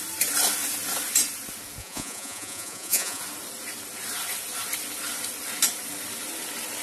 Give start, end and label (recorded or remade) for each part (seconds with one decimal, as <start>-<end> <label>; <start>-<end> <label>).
0.0-1.8 recorded; 1.8-3.2 remade; 3.2-6.8 recorded